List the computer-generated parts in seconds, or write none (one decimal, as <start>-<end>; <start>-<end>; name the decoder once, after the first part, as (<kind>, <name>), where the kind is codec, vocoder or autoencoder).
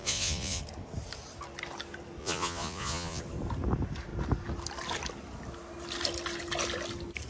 0.0-0.6 (vocoder, Vocos); 2.2-3.2